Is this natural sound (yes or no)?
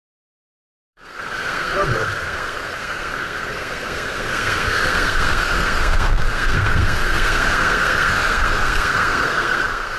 no